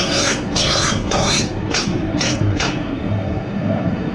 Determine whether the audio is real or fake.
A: fake